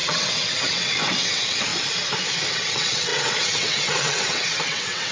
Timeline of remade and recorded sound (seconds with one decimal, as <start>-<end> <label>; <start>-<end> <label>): 0.0-1.7 remade; 1.7-2.5 recorded; 2.5-5.1 remade